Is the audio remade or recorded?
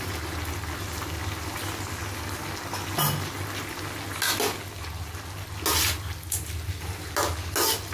recorded